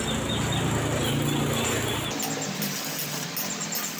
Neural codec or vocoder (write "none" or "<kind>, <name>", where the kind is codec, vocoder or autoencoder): none